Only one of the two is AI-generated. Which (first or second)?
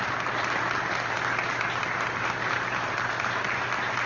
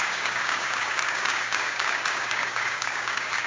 second